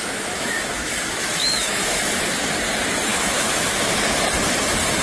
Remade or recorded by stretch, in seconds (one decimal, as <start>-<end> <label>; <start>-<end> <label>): 0.0-2.2 remade; 2.2-3.1 recorded; 3.1-3.9 remade; 3.9-5.0 recorded